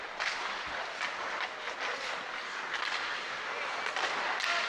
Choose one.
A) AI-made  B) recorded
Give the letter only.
B